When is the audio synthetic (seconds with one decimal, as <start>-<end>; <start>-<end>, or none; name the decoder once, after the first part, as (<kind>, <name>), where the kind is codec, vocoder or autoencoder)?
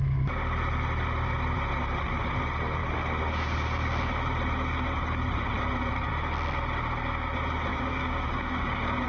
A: 7.7-9.1 (codec, DAC)